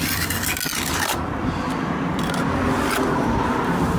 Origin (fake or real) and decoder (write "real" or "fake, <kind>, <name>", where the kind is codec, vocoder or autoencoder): real